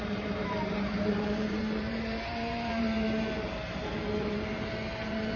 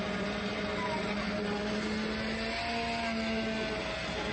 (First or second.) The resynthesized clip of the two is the first